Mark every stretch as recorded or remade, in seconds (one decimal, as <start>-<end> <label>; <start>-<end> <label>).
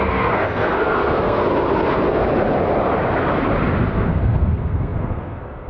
0.0-1.4 remade; 1.4-3.9 recorded; 3.9-5.7 remade